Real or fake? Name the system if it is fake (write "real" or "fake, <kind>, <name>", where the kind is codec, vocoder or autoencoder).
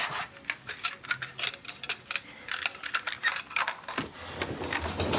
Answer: real